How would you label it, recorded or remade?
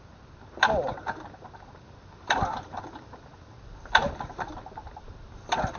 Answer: remade